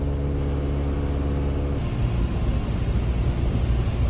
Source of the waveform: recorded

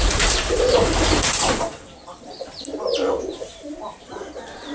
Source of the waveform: remade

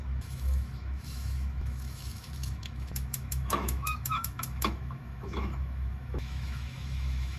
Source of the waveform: remade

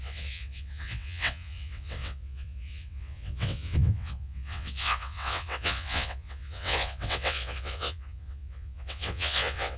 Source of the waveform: remade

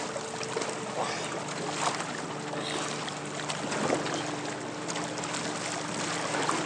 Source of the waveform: recorded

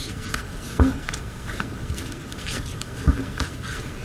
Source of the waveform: remade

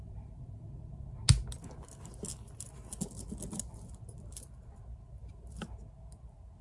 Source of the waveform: recorded